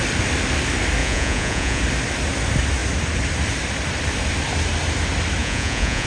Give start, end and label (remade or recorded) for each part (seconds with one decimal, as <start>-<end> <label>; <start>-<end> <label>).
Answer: 0.0-1.0 recorded; 1.0-1.8 remade; 1.8-5.4 recorded; 5.4-6.1 remade